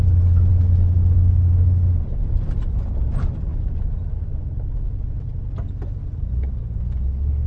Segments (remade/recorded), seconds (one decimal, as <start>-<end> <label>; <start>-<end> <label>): 0.0-7.5 recorded